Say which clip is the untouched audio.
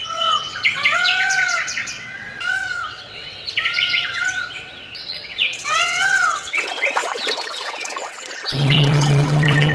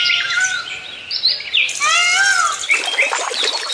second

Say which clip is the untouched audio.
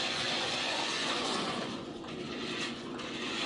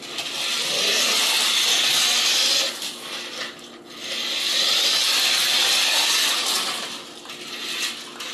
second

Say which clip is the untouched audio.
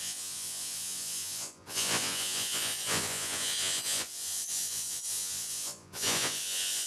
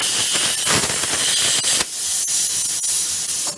second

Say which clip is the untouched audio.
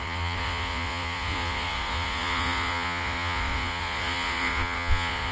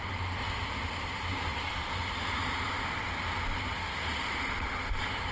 second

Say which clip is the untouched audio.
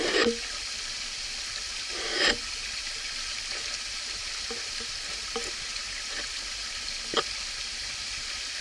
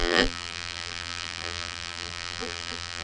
first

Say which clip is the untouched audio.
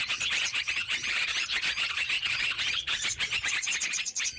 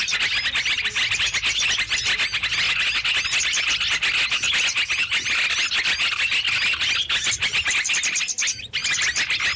second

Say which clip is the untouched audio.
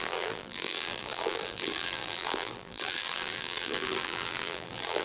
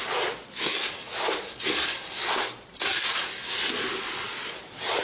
second